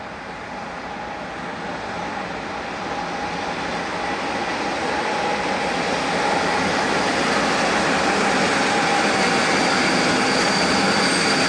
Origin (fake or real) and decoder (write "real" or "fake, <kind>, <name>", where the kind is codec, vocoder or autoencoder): real